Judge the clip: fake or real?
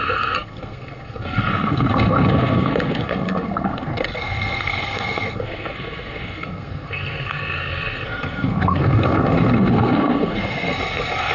fake